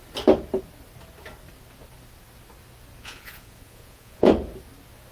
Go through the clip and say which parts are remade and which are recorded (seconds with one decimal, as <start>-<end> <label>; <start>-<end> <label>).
0.0-3.0 recorded; 3.0-4.3 remade; 4.3-5.1 recorded